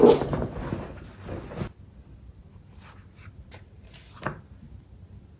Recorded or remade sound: recorded